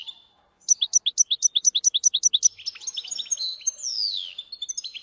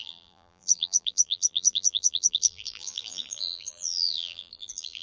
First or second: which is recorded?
first